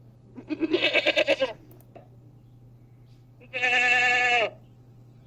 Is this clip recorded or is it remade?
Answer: recorded